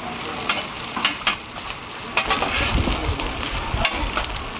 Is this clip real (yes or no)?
no